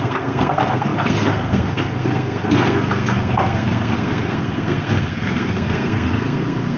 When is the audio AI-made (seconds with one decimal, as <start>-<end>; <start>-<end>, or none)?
0.0-6.8